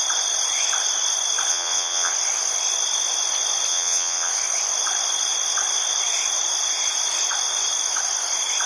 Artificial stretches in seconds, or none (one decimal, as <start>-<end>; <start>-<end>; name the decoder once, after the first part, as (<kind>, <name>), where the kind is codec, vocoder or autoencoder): 1.5-2.1 (vocoder, WaveNeXt); 3.7-4.3